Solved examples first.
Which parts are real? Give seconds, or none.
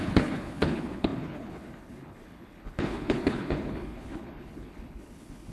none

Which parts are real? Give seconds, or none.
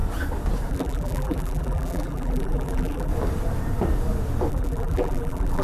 0.0-0.7; 3.1-4.5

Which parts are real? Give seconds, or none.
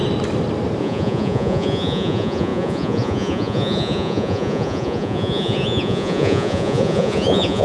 0.0-0.8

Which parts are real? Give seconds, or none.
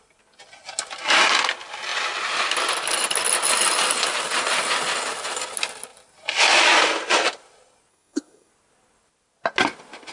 0.0-7.9; 8.5-10.1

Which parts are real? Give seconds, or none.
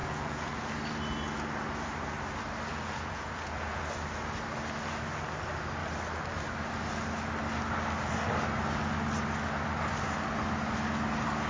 0.7-2.7; 3.8-11.5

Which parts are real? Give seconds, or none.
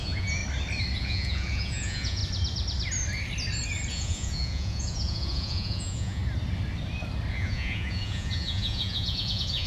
0.4-1.0; 2.2-3.9; 6.2-7.3